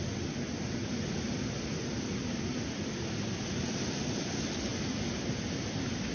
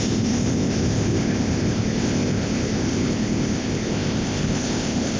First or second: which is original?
first